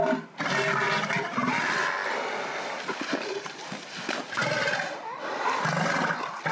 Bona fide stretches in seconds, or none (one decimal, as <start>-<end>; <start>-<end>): 0.0-2.0; 3.4-6.5